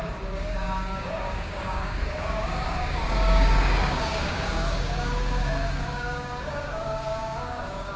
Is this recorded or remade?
remade